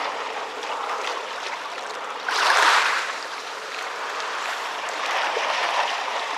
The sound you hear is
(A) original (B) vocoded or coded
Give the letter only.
B